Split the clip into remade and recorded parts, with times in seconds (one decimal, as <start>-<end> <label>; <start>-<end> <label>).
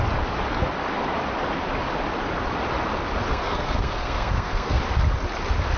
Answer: 0.0-3.3 recorded; 3.3-4.8 remade; 4.8-5.8 recorded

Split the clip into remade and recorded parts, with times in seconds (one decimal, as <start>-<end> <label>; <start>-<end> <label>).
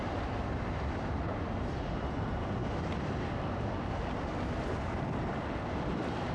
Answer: 0.0-1.5 remade; 1.5-6.3 recorded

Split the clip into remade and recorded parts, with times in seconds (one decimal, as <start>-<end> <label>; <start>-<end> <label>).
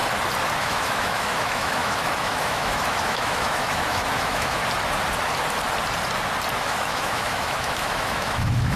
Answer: 0.0-0.6 recorded; 0.6-4.6 remade; 4.6-6.5 recorded; 6.5-8.8 remade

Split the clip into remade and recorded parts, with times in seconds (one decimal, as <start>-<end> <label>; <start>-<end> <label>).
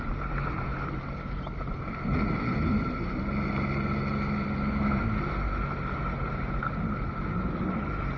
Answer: 0.0-8.2 recorded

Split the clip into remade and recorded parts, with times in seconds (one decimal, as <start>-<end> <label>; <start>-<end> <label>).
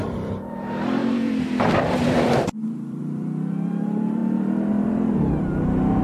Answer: 0.0-4.2 remade; 4.2-4.7 recorded; 4.7-6.0 remade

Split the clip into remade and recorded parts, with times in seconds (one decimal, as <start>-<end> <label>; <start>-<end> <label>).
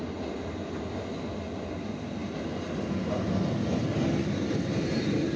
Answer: 0.0-5.4 recorded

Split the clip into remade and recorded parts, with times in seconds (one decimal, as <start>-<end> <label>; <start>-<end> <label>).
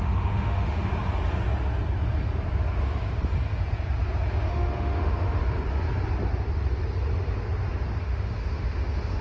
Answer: 0.0-0.9 remade; 0.9-4.3 recorded; 4.3-5.4 remade; 5.4-8.0 recorded; 8.0-9.2 remade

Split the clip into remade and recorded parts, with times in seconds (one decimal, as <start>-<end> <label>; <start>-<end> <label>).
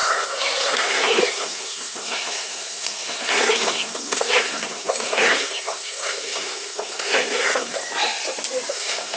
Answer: 0.0-7.8 remade; 7.8-8.7 recorded; 8.7-9.2 remade